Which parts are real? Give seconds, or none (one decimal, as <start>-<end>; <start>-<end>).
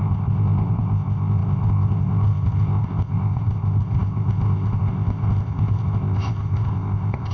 none